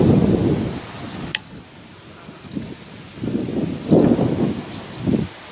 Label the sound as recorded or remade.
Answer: recorded